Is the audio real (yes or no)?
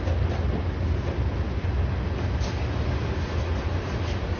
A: yes